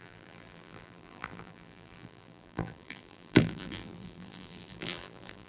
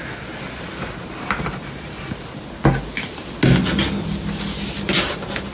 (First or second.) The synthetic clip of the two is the first